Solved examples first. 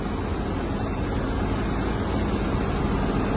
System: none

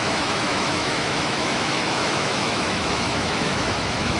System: autoencoder, DAC-VAE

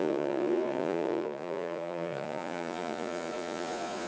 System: vocoder, Vocos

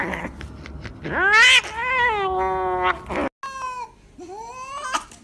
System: none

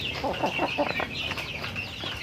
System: none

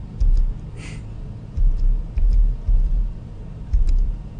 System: vocoder, BigVGAN v2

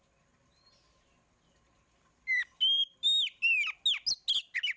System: none